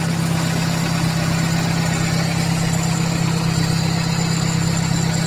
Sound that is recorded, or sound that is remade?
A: recorded